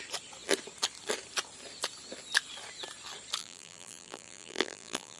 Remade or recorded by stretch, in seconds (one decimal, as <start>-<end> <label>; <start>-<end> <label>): 0.0-3.4 recorded; 3.4-5.2 remade